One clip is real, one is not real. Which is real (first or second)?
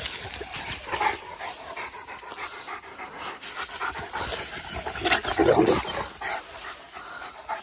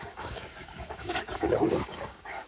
first